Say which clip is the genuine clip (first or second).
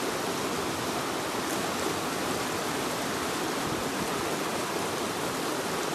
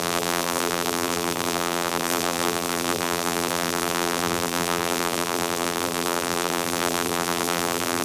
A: first